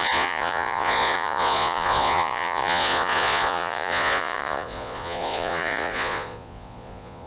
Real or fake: fake